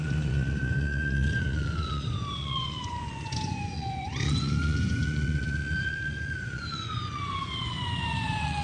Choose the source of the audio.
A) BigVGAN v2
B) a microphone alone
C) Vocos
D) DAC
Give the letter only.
C